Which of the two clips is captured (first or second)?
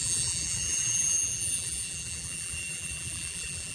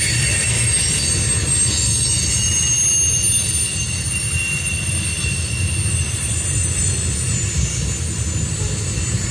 second